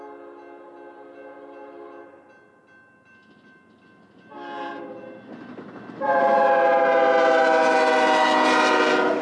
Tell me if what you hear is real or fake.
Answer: real